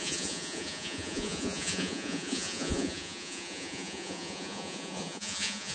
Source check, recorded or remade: remade